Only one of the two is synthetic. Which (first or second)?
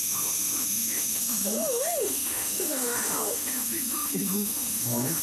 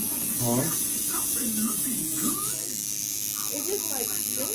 first